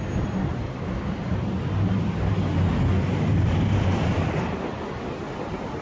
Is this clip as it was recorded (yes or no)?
yes